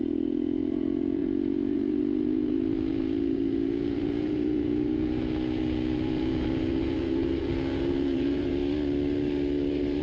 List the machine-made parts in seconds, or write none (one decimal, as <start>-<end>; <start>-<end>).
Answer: 0.0-8.6